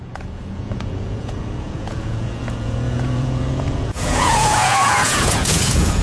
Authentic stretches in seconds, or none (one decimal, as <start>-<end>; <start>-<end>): none